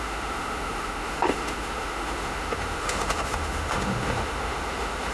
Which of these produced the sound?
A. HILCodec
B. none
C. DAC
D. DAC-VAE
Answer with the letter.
D